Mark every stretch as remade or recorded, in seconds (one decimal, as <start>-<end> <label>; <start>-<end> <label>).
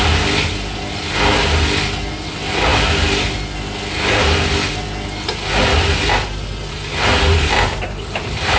0.0-7.3 recorded; 7.3-8.6 remade